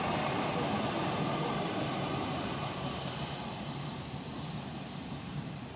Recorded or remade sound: remade